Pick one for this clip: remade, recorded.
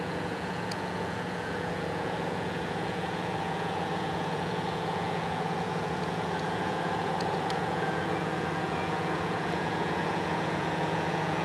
remade